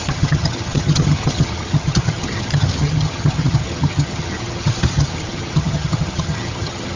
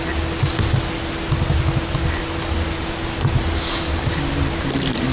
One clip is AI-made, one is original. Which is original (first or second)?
second